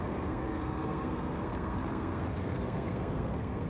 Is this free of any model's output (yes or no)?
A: no